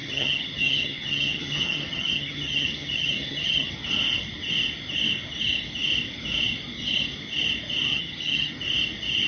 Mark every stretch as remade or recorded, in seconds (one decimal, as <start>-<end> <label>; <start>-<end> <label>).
0.0-3.7 remade; 3.7-7.9 recorded; 7.9-8.5 remade; 8.5-9.3 recorded